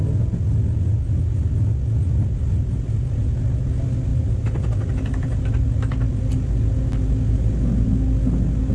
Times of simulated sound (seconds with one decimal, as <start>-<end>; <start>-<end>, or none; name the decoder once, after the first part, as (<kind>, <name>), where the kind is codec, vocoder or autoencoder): 4.1-5.4 (vocoder, BigVGAN v2)